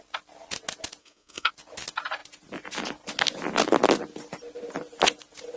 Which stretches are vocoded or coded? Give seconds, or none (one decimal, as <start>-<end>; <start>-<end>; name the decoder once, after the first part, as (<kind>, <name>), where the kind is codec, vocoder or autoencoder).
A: 1.0-1.5 (codec, SNAC)